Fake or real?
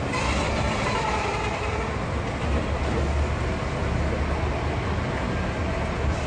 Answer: real